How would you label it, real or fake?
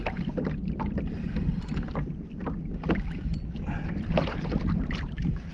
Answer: real